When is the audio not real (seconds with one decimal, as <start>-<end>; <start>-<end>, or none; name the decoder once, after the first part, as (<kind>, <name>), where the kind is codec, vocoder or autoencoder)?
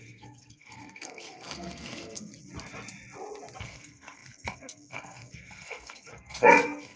0.0-2.3 (codec, SNAC); 3.6-7.0